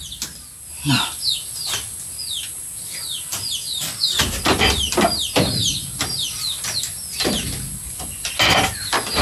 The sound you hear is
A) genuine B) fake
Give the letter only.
A